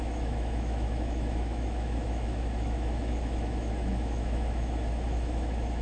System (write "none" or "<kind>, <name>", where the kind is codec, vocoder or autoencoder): autoencoder, DAC-VAE